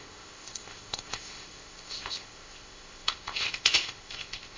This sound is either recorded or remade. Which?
remade